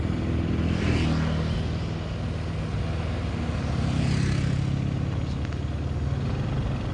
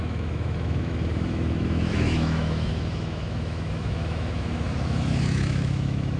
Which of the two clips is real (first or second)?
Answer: first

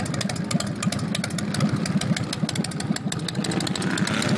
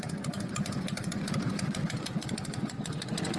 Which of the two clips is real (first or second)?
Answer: first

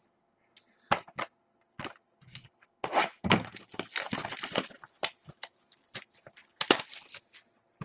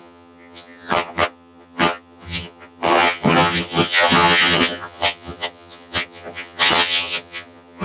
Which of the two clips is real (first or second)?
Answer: first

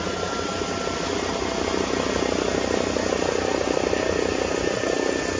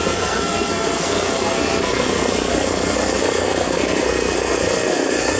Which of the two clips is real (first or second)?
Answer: first